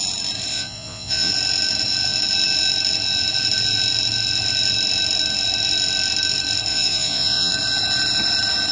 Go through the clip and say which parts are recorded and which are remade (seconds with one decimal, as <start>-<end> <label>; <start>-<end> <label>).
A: 0.0-0.5 recorded; 0.5-1.3 remade; 1.3-6.7 recorded; 6.7-7.5 remade; 7.5-8.7 recorded

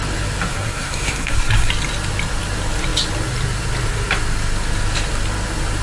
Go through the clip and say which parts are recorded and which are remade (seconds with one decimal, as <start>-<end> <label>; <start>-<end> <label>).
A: 0.0-0.5 recorded; 0.5-1.7 remade; 1.7-5.8 recorded

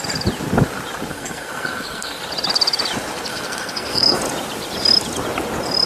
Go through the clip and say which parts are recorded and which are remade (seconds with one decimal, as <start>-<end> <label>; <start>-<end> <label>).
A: 0.0-1.1 recorded; 1.1-2.2 remade; 2.2-3.3 recorded; 3.3-4.2 remade; 4.2-5.9 recorded